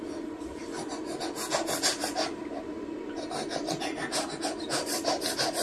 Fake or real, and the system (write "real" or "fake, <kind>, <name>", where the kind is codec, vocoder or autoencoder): real